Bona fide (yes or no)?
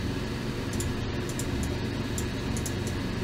yes